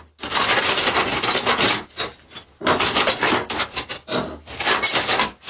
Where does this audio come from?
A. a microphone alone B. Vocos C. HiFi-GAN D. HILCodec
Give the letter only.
A